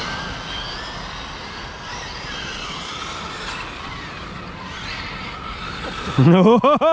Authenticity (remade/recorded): recorded